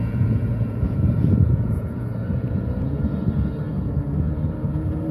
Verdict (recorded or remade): remade